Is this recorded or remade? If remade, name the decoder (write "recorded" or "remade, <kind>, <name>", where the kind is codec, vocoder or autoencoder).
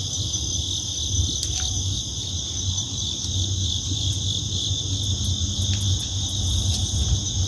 recorded